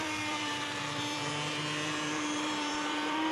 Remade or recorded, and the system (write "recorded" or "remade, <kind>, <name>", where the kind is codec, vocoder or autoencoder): remade, vocoder, BigVGAN v2